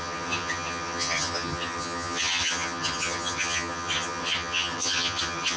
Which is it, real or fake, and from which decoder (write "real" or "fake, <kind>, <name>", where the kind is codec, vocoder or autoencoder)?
fake, vocoder, HiFi-GAN